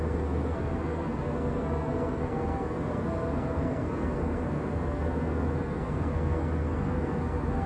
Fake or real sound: fake